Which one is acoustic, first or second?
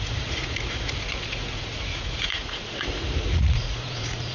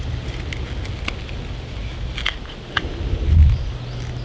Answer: second